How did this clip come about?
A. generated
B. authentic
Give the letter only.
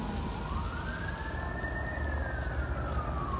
B